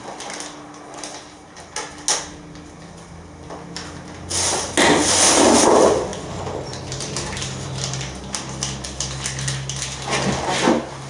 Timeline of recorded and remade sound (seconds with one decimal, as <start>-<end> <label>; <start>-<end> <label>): 0.0-11.1 recorded